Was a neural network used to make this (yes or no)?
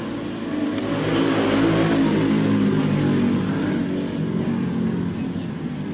no